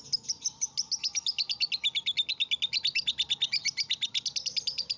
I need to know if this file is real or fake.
real